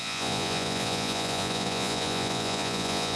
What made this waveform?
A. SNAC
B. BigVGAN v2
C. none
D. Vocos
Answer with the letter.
D